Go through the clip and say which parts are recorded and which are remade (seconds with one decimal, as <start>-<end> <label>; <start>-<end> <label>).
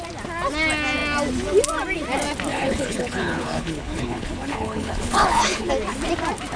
0.0-2.5 recorded; 2.5-5.7 remade; 5.7-6.6 recorded